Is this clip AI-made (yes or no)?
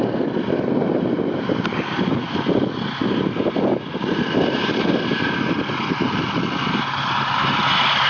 no